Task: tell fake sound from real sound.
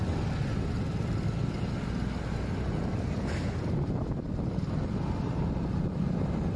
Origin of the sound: real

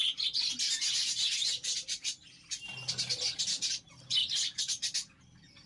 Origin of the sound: real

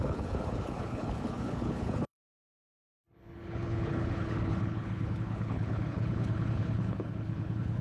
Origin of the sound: fake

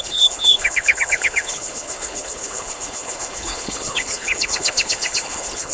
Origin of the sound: fake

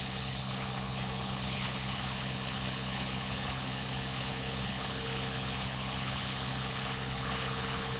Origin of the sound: fake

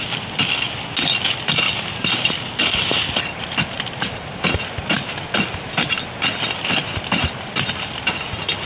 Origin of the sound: real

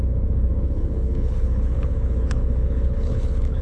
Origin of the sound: fake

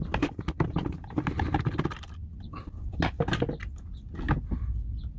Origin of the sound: real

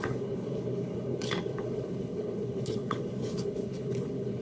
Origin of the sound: fake